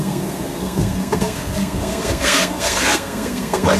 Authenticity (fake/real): fake